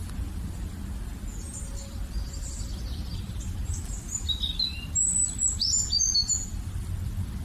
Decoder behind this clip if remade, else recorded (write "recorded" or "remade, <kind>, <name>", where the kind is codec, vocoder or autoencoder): recorded